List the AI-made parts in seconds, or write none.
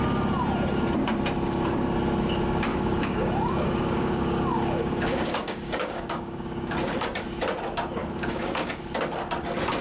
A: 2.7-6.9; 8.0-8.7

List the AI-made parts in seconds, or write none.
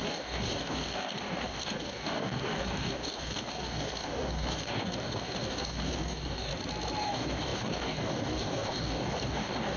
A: 0.0-6.5; 7.0-9.8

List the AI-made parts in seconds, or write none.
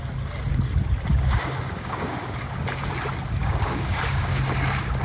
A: 1.1-2.4; 3.4-5.0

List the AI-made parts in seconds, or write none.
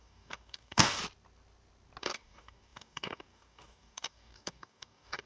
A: 0.0-1.0; 2.0-5.3